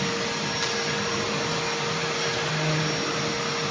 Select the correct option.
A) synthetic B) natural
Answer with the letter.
B